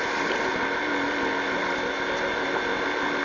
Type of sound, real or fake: real